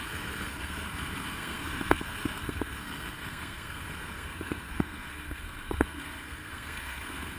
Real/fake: fake